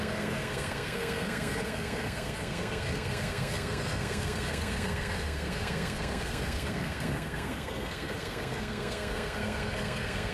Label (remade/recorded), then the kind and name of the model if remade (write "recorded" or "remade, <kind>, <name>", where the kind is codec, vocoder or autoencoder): remade, codec, SNAC